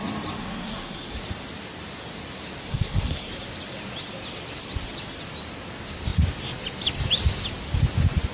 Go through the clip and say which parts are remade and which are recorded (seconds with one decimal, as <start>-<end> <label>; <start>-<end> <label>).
0.0-0.4 recorded; 0.4-1.1 remade; 1.1-2.6 recorded; 2.6-3.3 remade; 3.3-8.3 recorded